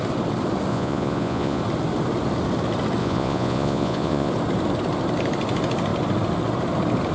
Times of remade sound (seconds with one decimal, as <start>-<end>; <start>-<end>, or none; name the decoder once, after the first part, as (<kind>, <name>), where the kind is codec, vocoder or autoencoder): 0.7-1.6 (vocoder, Vocos); 3.0-4.3